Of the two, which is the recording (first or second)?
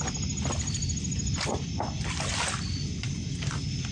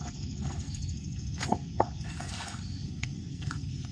first